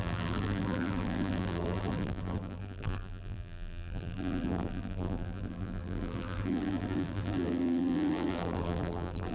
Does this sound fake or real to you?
fake